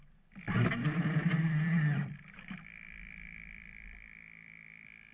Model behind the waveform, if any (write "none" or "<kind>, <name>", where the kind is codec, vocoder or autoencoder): vocoder, BigVGAN v2